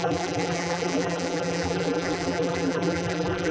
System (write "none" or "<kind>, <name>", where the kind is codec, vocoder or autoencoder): vocoder, BigVGAN v2